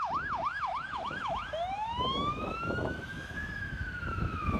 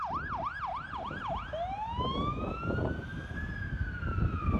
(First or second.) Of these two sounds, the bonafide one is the second